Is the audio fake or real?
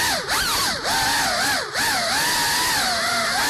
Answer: real